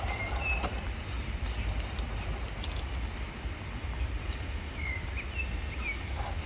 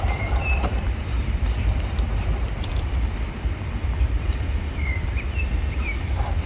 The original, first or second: first